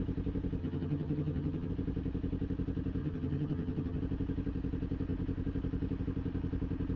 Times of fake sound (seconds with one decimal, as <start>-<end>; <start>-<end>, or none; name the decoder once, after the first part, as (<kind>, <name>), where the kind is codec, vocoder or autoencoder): 0.6-1.7 (vocoder, HiFi-GAN); 3.0-4.0